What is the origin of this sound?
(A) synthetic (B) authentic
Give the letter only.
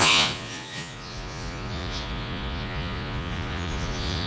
A